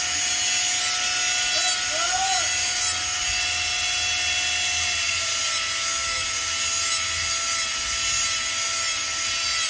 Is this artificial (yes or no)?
no